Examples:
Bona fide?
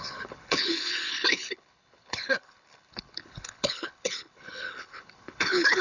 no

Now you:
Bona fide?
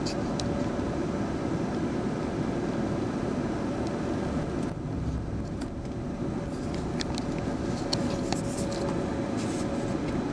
yes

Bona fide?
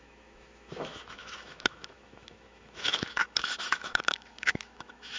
no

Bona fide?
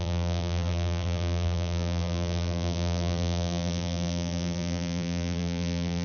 no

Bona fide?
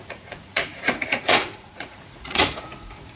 no